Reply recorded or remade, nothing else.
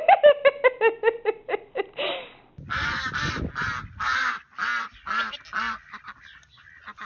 recorded